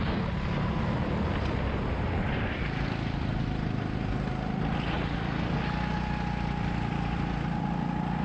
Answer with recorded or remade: recorded